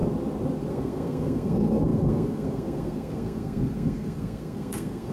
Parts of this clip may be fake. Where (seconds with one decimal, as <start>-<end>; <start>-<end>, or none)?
0.7-5.1